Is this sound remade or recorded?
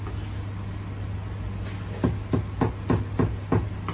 recorded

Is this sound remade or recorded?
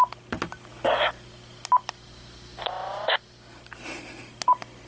recorded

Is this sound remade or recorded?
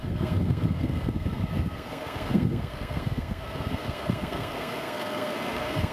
remade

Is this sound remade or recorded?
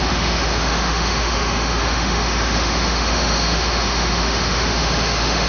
remade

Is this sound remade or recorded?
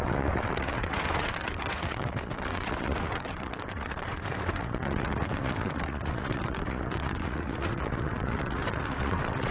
remade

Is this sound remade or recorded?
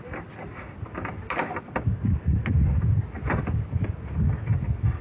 recorded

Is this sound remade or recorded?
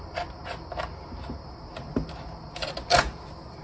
recorded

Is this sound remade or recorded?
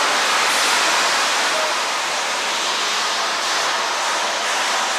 recorded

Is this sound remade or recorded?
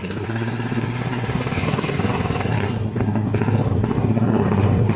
remade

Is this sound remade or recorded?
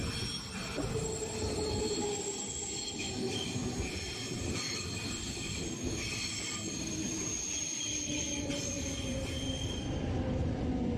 recorded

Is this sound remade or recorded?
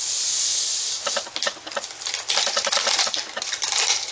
recorded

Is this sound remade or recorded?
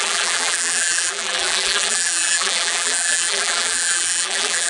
remade